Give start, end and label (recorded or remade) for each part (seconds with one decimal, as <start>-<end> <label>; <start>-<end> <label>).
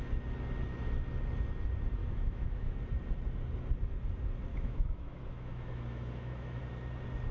0.0-2.0 recorded; 2.0-2.8 remade; 2.8-4.5 recorded; 4.5-6.6 remade; 6.6-7.3 recorded